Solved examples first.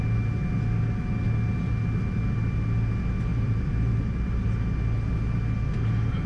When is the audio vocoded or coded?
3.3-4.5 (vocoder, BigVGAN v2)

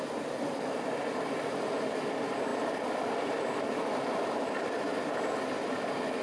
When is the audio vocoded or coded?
none

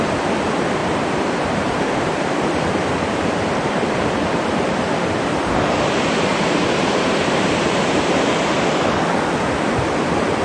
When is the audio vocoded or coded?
0.8-5.5 (vocoder, BigVGAN v2); 6.3-8.7

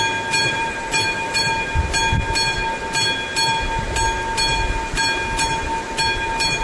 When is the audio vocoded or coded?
0.4-1.5 (vocoder, BigVGAN v2)

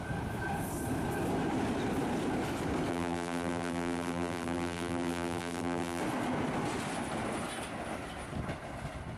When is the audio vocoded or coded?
2.9-6.0 (vocoder, BigVGAN v2)

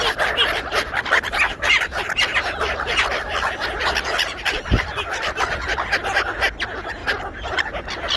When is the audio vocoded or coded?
0.5-5.4 (vocoder, BigVGAN v2)

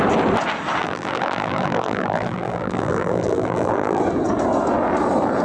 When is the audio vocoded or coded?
0.8-4.0 (vocoder, BigVGAN v2)

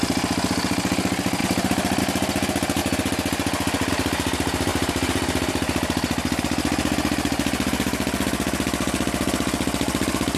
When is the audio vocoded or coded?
1.4-2.0 (vocoder, BigVGAN v2); 4.7-6.4